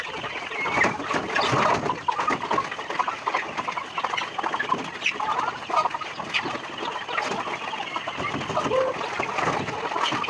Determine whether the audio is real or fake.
real